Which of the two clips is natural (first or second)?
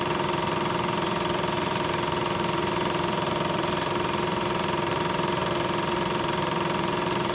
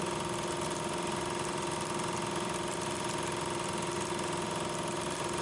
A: second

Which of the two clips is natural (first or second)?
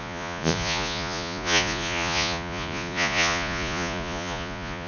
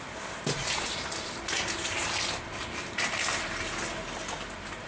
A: second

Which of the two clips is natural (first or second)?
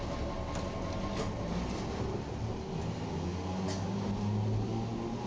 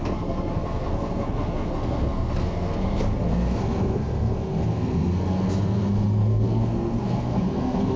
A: first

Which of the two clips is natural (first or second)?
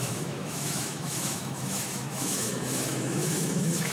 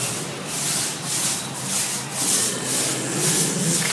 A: second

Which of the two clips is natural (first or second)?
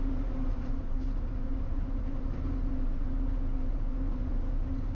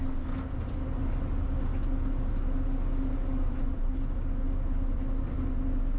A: second